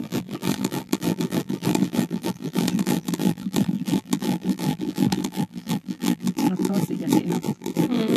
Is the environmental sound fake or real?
fake